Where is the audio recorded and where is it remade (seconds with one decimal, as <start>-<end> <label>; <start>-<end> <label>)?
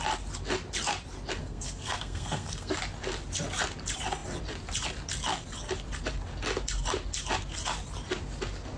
0.0-1.4 recorded; 1.4-2.8 remade; 2.8-8.8 recorded